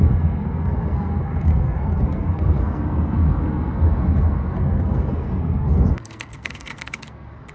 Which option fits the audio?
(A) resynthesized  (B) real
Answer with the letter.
A